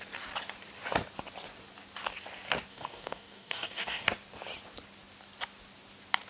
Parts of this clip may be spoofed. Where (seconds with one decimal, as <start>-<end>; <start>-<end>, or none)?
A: 2.7-4.1